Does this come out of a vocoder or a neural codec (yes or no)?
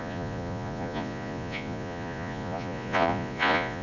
yes